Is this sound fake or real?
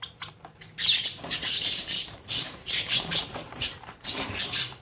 fake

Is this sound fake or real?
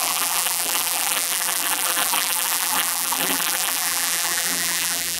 fake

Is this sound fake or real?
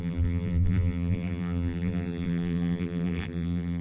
fake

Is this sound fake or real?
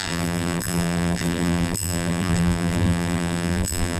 fake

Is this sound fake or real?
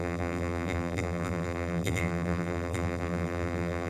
fake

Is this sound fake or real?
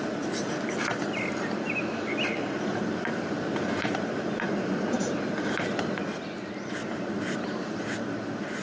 real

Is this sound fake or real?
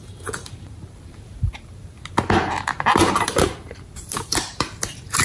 fake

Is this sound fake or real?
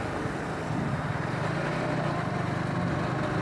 real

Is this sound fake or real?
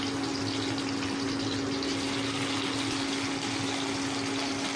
real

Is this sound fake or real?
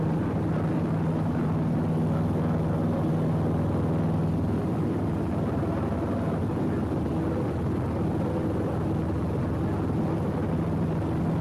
real